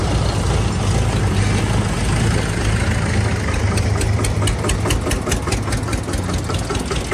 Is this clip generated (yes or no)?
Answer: no